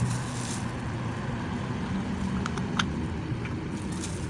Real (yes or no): yes